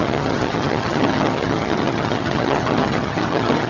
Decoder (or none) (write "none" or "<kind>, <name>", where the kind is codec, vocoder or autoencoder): vocoder, HiFi-GAN